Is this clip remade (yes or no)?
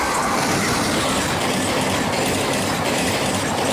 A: no